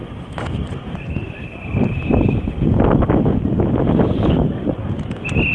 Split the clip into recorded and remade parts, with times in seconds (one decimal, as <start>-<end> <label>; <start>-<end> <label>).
0.0-1.6 remade; 1.6-5.5 recorded